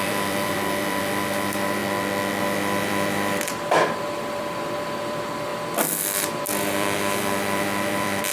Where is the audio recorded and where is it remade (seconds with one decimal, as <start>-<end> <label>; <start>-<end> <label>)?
0.0-1.8 remade; 1.8-2.4 recorded; 2.4-8.3 remade